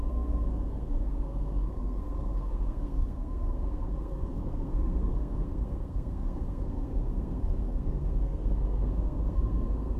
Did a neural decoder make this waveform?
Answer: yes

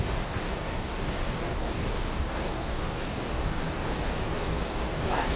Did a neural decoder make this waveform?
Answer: yes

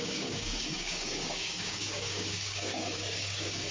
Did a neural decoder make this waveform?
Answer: yes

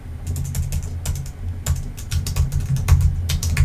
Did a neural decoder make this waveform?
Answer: no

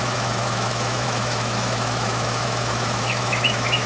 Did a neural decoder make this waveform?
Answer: yes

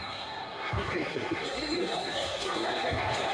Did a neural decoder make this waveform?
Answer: yes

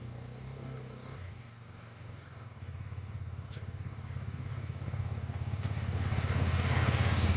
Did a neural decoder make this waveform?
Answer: yes